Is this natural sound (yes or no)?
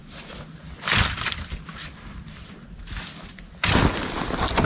yes